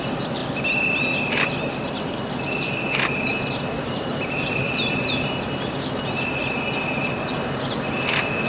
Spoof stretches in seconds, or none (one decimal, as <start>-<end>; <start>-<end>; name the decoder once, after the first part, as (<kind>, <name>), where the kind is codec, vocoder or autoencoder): 3.3-5.3 (vocoder, BigVGAN v2)